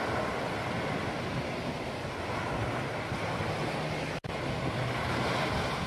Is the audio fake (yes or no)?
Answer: no